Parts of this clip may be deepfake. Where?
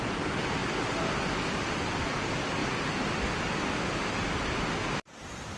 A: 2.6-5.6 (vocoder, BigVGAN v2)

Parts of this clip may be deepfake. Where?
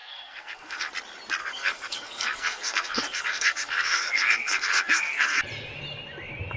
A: 0.0-0.9 (codec, SNAC); 1.4-5.4